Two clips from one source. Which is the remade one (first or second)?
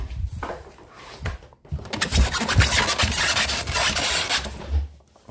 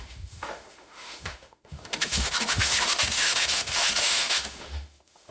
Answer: second